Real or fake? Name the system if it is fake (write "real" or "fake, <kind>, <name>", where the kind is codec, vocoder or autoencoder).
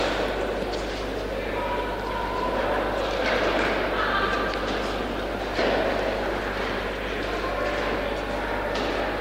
real